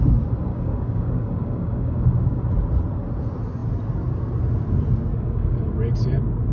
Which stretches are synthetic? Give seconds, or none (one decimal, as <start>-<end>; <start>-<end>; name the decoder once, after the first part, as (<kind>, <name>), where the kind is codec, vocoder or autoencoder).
0.5-2.4 (codec, DAC); 5.1-5.7